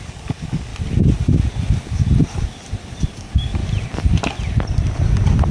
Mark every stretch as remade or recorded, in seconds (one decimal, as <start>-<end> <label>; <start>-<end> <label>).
0.0-0.7 remade; 0.7-3.2 recorded; 3.2-3.6 remade; 3.6-5.5 recorded